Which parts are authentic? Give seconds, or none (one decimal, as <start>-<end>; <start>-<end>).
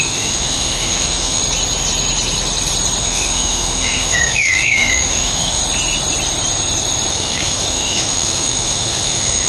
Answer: 1.4-3.0; 5.6-7.1